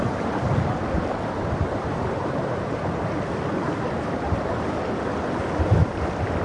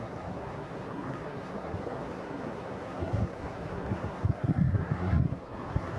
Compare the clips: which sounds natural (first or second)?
first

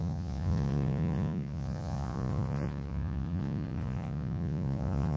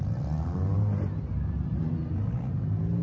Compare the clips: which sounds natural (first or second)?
second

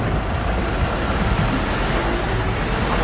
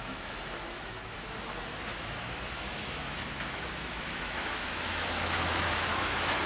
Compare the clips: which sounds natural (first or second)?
first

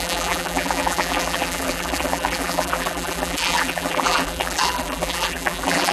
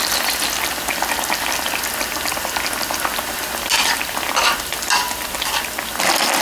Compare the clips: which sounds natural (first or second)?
second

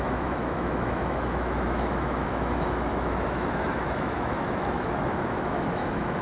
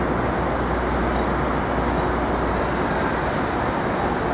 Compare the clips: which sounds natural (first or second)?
second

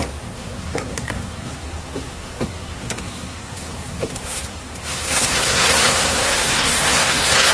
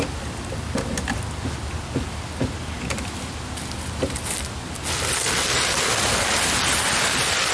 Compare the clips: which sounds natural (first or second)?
second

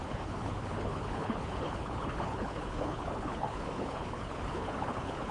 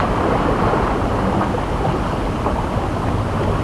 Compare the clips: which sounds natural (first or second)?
second